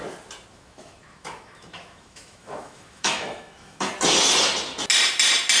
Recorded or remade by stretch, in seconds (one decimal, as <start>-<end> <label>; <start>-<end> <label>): 0.0-0.5 recorded; 0.5-3.9 remade; 3.9-5.6 recorded